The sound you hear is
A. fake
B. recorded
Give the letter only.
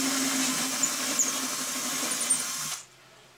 B